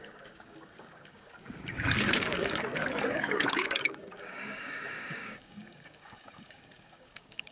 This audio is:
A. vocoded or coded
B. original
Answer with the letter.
A